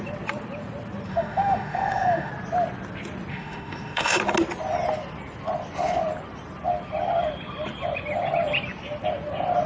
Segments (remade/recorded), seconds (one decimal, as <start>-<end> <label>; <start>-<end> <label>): 0.0-1.1 recorded; 1.1-2.3 remade; 2.3-3.3 recorded; 3.3-4.2 remade; 4.2-9.7 recorded